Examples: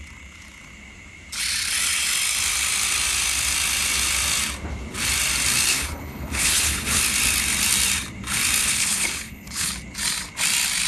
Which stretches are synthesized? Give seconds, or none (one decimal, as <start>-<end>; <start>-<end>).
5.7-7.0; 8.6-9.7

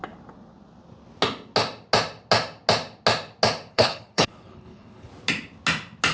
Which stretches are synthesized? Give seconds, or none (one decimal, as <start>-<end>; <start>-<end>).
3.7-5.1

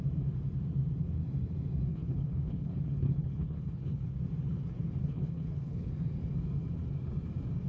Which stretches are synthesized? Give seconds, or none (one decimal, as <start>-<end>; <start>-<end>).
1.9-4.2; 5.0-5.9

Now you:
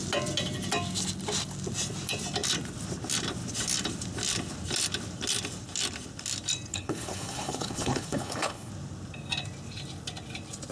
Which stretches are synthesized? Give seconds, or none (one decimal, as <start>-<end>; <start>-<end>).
6.7-8.7

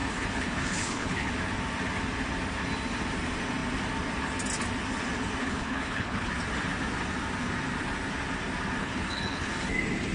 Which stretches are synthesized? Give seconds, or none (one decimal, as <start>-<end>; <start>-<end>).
0.0-1.3; 5.4-6.3; 8.8-9.5